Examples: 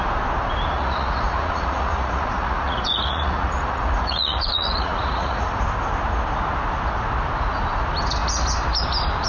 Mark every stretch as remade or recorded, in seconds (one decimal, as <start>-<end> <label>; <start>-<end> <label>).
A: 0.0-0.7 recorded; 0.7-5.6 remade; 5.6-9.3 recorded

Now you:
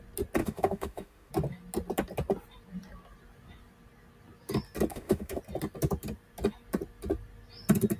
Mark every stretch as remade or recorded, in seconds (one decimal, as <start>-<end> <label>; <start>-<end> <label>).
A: 0.0-0.4 recorded; 0.4-1.3 remade; 1.3-4.9 recorded; 4.9-5.4 remade; 5.4-8.0 recorded

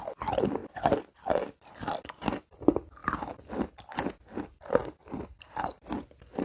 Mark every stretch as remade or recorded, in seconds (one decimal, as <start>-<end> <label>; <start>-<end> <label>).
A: 0.0-0.6 recorded; 0.6-2.4 remade; 2.4-4.8 recorded; 4.8-5.6 remade; 5.6-6.4 recorded